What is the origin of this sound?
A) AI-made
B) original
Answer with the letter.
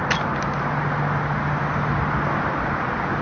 B